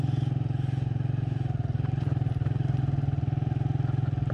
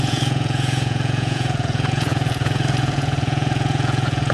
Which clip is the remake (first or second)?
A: second